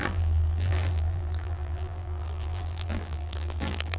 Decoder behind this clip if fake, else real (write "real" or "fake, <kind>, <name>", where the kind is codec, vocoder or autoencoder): fake, vocoder, BigVGAN v2